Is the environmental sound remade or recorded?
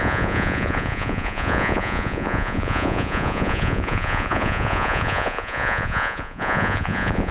remade